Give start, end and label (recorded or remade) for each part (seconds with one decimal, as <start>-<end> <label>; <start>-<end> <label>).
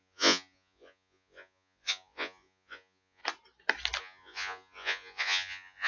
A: 0.0-3.2 remade; 3.2-4.0 recorded; 4.0-5.9 remade